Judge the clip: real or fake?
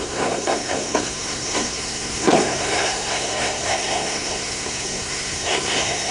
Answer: fake